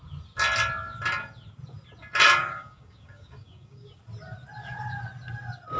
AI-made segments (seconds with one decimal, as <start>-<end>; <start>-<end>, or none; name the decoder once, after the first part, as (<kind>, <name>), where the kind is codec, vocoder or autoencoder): 2.4-4.0 (codec, DAC)